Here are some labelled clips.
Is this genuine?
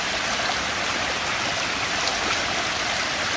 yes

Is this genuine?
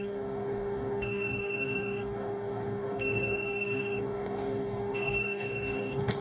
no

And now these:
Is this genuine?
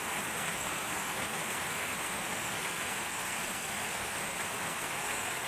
no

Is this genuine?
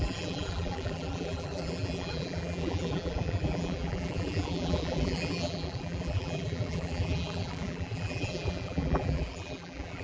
no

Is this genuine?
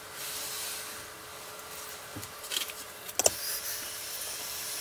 yes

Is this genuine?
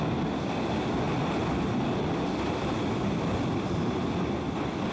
yes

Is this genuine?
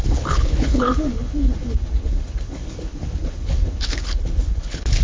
no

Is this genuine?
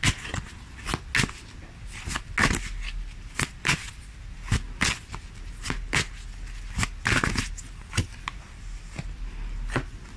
yes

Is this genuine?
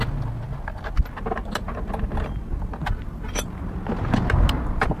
yes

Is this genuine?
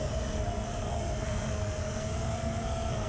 no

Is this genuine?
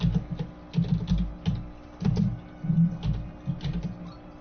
yes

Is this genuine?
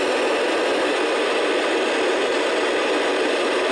yes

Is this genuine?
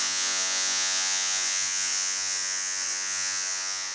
no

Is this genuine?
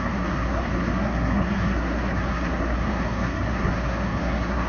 no